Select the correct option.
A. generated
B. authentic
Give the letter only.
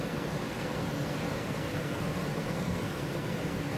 A